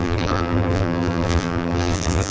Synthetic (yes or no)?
yes